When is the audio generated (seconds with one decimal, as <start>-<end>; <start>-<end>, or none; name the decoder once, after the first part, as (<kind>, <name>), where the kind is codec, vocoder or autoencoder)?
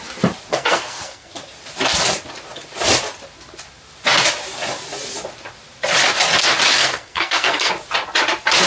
0.5-1.3 (codec, SNAC); 6.8-7.7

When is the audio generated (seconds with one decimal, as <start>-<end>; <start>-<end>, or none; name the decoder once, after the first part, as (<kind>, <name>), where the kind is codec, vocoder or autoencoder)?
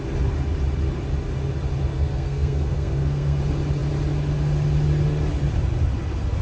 1.9-3.4 (codec, SNAC)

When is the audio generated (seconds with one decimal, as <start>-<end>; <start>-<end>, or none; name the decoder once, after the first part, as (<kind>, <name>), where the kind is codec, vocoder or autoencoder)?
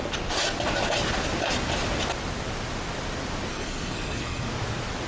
3.5-4.5 (codec, SNAC)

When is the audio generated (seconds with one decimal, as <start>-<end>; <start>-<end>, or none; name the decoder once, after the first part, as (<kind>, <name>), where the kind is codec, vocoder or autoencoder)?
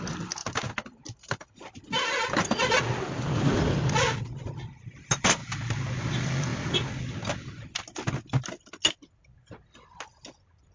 none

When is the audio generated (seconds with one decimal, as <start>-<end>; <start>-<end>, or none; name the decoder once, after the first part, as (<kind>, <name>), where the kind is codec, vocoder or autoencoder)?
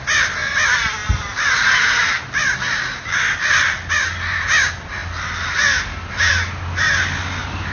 none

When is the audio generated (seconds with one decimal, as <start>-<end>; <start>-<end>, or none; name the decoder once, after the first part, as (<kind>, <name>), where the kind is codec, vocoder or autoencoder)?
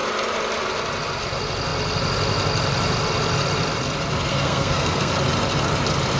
4.3-5.1 (codec, SNAC)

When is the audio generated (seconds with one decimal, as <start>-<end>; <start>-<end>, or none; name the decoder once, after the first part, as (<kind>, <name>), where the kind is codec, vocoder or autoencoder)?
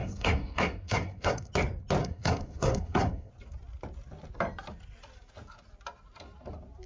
0.0-1.5 (codec, SNAC); 2.0-3.3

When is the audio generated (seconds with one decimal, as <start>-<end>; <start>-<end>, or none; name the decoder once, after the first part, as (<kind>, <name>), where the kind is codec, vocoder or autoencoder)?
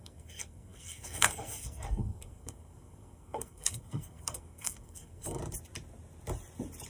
0.0-5.4 (codec, SNAC)